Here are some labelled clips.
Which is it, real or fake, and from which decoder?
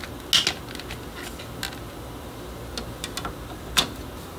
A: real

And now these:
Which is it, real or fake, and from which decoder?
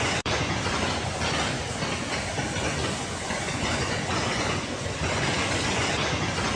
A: fake, vocoder, Vocos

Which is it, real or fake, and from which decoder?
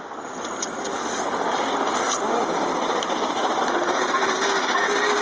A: real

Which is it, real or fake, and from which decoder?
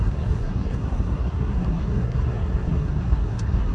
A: fake, codec, SNAC